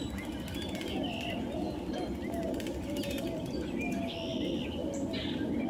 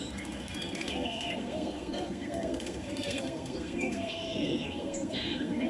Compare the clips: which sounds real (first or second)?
first